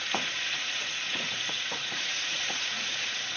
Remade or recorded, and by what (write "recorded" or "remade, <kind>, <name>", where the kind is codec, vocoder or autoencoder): remade, vocoder, Vocos